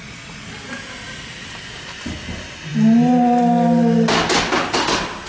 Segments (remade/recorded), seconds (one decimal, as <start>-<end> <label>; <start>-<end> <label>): 0.0-5.3 recorded